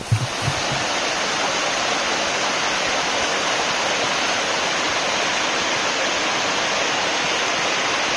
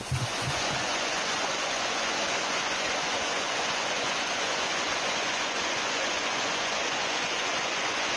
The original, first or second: first